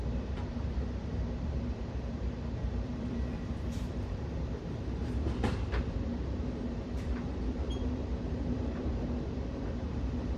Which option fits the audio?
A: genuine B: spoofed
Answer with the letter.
B